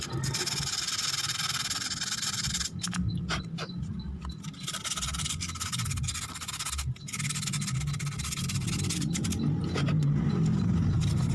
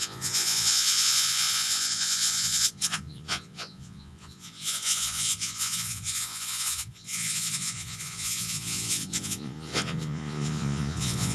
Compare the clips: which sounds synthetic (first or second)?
second